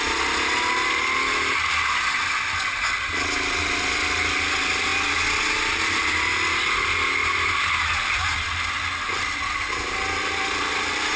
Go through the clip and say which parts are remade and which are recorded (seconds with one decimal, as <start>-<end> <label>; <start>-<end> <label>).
0.0-11.2 recorded